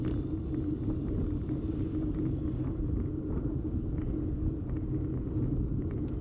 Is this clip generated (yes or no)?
no